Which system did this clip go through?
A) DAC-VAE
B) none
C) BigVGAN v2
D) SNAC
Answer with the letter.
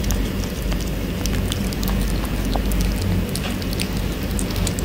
B